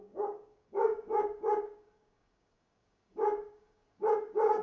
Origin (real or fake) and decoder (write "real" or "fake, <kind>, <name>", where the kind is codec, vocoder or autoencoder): fake, codec, DAC